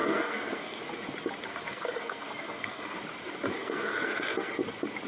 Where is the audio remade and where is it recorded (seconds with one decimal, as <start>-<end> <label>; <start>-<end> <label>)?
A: 0.0-0.8 remade; 0.8-1.5 recorded; 1.5-3.0 remade; 3.0-3.6 recorded; 3.6-4.5 remade; 4.5-5.1 recorded